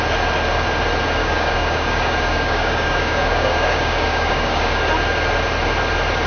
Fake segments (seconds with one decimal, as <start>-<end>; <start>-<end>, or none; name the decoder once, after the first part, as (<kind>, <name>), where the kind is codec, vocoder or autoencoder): 1.2-4.8 (codec, DAC)